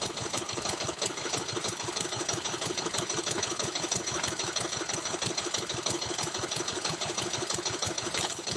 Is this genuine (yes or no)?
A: no